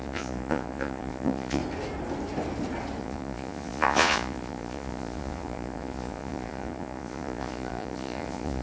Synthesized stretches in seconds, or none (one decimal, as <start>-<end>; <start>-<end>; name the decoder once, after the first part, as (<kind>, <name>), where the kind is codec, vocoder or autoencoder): 0.0-1.6 (vocoder, Vocos); 3.0-8.6